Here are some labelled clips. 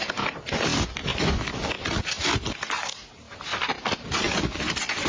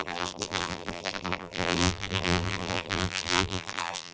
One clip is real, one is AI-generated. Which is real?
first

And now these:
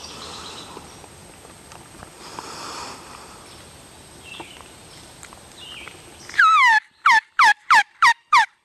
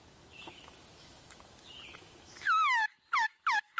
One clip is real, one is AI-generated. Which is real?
first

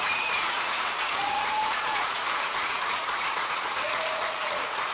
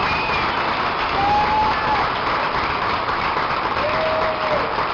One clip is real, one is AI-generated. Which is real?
second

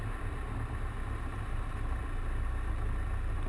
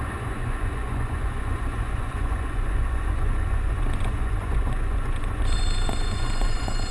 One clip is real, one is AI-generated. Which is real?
first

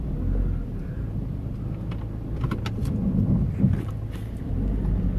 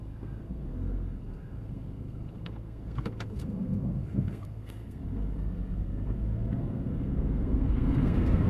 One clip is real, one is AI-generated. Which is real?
first